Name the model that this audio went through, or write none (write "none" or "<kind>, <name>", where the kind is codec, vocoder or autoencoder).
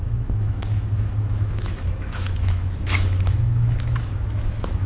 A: autoencoder, DAC-VAE